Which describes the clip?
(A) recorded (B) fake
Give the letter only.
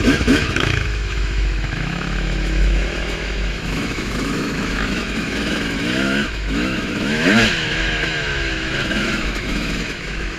B